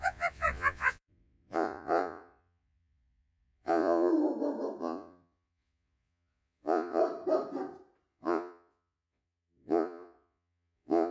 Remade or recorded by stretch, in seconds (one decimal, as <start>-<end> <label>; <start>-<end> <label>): 0.0-4.1 remade; 4.1-4.8 recorded; 4.8-7.0 remade; 7.0-8.1 recorded; 8.1-11.1 remade